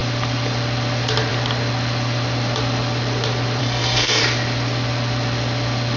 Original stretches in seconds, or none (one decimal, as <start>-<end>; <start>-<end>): 0.0-3.6; 4.2-6.0